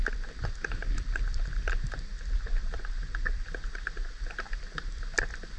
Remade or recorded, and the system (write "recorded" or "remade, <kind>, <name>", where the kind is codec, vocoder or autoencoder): recorded